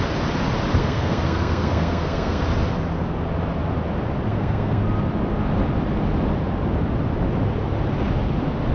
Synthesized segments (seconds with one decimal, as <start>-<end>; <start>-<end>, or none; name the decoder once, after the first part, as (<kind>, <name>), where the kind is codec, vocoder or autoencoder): 0.8-2.4 (codec, SNAC); 4.3-4.8